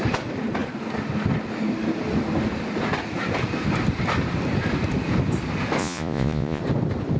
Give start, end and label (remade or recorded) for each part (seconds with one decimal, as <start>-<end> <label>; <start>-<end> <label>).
0.0-5.8 recorded; 5.8-6.6 remade; 6.6-7.2 recorded